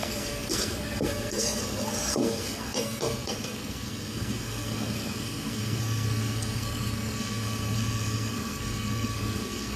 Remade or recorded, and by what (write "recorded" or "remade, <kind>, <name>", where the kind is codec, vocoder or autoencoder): remade, codec, SNAC